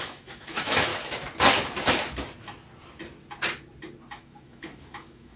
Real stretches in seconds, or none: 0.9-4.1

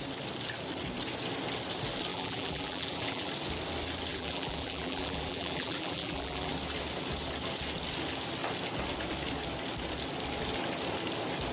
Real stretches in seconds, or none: 0.0-2.1; 3.3-4.1; 6.5-11.5

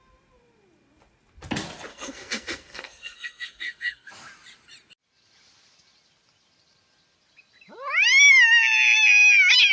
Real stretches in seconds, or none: 0.0-1.9; 4.1-9.7

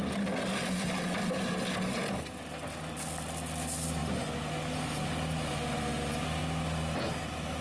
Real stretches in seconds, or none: 0.0-7.6

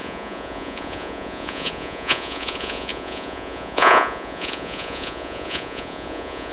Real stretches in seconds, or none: none

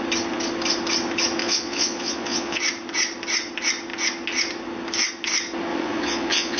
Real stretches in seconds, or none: 0.0-1.4; 2.6-5.7

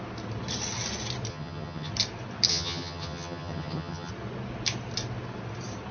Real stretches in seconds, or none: 0.0-1.3; 1.9-2.5; 4.1-5.9

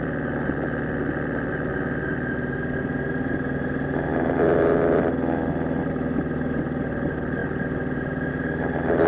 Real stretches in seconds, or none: 0.0-9.1